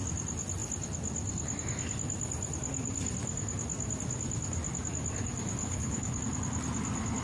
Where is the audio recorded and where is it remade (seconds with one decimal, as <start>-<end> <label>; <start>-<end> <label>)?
0.0-5.6 recorded; 5.6-6.2 remade; 6.2-7.2 recorded